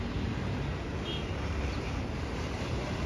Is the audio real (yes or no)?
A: no